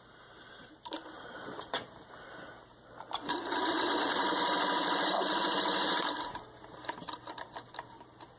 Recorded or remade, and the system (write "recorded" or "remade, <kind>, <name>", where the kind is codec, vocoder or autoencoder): remade, vocoder, BigVGAN v2